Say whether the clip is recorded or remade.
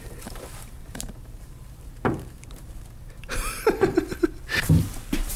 remade